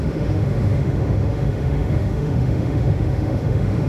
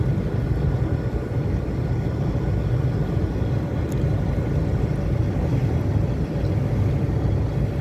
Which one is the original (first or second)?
second